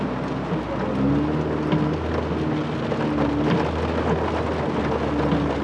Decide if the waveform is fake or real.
real